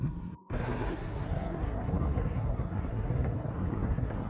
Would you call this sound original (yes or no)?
no